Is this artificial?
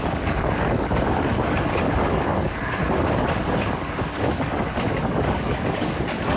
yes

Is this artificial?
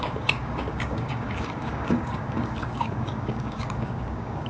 yes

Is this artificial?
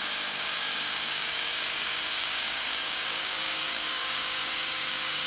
yes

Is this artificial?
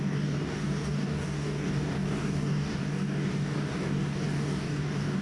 yes